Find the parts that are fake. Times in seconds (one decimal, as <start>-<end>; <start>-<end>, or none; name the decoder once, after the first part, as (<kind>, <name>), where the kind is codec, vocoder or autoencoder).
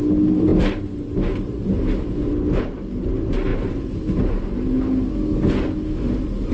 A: none